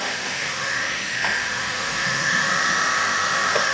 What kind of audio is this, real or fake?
fake